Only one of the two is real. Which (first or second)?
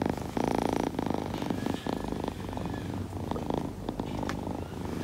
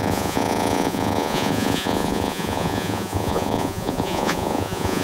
first